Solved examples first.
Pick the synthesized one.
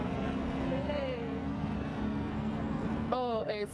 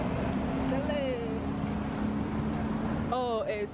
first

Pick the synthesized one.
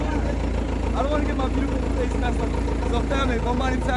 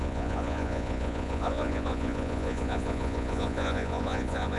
second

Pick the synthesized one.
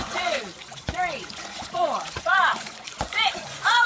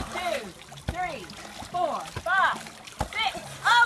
first